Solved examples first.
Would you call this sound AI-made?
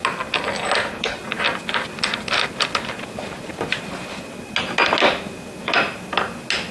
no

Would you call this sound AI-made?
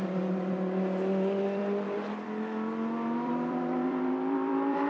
yes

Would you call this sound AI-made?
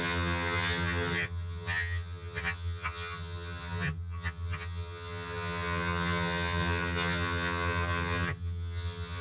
yes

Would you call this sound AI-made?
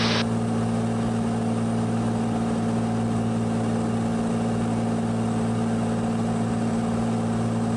no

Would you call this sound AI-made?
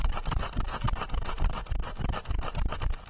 no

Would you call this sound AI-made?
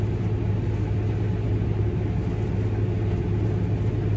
no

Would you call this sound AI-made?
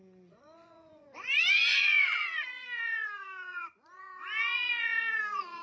yes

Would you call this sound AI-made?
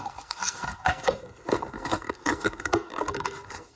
yes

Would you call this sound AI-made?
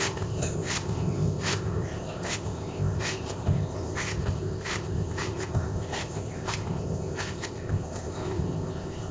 yes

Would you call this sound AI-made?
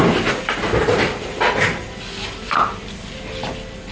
no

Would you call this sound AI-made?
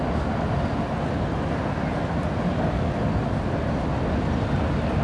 no